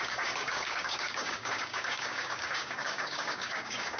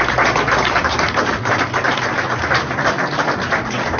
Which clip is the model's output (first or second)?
first